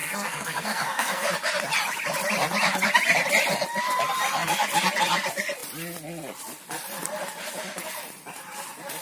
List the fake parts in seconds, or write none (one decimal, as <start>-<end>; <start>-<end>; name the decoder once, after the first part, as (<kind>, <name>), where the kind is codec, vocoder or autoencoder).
0.0-1.3 (codec, SNAC)